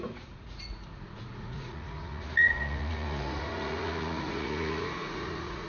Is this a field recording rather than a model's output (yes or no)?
no